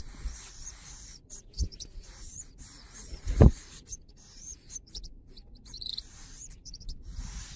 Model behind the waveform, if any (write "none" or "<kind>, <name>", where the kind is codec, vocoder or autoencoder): vocoder, Vocos